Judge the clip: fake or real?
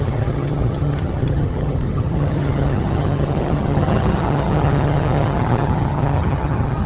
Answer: fake